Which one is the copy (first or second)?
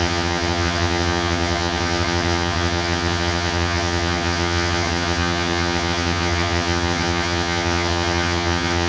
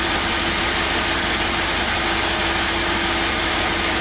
first